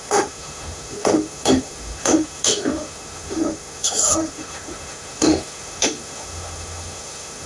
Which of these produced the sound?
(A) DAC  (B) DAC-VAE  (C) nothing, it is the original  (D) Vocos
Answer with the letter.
B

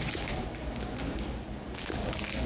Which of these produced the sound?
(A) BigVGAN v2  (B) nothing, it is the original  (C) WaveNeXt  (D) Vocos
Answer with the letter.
B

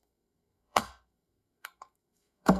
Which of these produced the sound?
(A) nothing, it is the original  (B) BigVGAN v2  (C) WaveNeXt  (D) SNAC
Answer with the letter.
D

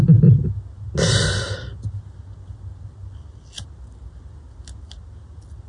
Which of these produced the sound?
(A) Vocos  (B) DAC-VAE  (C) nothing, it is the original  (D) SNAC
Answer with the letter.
C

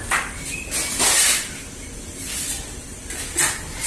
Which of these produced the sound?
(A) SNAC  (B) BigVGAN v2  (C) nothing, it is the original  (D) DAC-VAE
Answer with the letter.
C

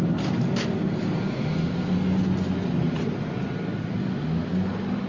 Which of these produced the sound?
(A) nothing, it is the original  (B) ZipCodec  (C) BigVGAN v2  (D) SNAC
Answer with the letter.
A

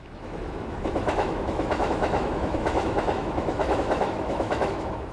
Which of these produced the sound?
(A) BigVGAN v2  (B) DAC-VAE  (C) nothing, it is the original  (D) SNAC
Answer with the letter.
B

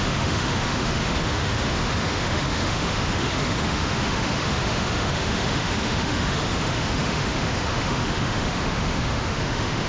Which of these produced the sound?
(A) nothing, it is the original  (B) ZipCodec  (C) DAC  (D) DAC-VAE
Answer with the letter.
D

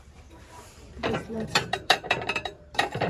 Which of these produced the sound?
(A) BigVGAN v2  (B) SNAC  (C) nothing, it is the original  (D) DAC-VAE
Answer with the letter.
A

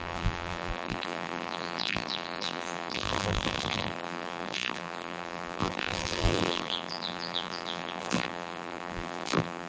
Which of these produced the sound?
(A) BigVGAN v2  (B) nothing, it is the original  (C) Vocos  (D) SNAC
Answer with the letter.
A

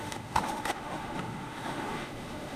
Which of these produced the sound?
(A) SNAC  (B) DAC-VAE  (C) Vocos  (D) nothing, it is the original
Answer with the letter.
B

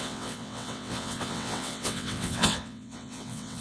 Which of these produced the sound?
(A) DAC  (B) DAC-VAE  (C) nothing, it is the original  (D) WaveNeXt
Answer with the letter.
D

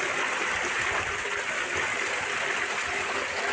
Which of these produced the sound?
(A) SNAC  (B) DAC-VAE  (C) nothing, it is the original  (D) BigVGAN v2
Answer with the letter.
C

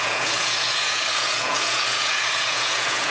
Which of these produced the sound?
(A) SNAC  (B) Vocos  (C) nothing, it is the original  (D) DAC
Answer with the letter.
B